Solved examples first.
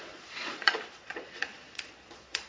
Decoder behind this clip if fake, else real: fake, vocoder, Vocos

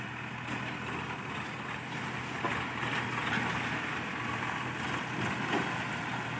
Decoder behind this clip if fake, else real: real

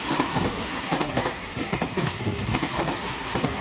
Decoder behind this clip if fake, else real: fake, codec, SNAC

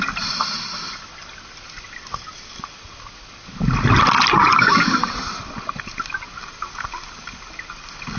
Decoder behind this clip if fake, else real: real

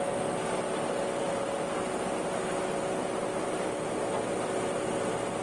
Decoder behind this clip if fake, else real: real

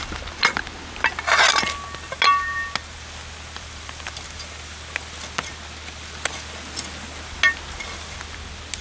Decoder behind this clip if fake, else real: real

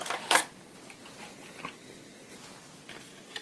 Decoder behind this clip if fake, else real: real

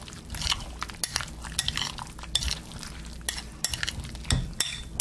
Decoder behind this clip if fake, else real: real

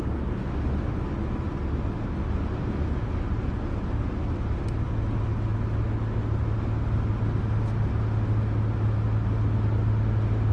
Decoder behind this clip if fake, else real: real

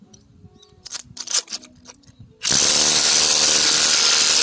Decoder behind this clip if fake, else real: real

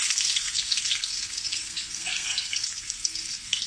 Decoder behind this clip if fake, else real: fake, codec, SNAC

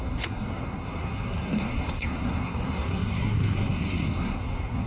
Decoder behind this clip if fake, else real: fake, codec, SNAC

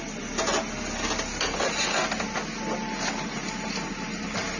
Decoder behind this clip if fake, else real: real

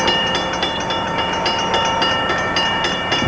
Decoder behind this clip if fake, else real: real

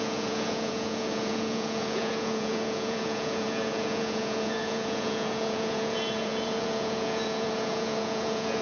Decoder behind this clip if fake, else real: fake, vocoder, Vocos